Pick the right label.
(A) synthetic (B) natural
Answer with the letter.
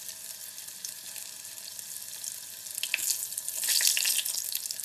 B